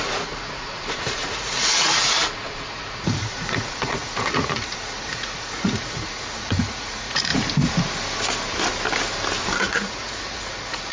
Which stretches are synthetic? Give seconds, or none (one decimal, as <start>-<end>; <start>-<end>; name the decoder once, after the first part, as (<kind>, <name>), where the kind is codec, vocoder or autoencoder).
0.0-7.3 (vocoder, Vocos); 9.6-10.9